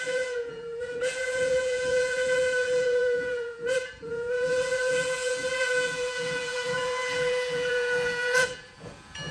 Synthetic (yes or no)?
yes